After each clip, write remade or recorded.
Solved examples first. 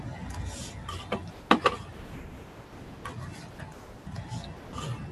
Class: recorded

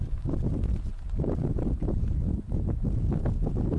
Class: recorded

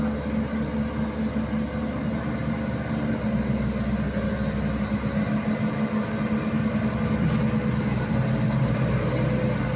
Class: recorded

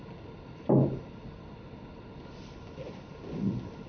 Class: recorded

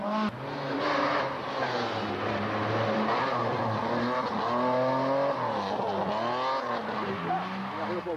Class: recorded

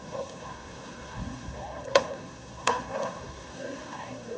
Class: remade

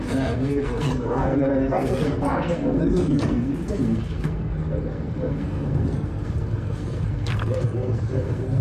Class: remade